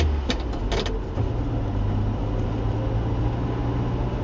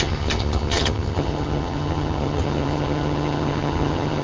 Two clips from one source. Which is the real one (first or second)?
first